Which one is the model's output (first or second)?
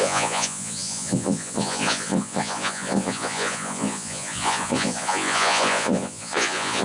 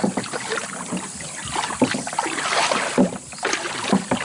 first